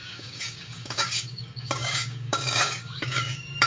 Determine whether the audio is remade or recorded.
remade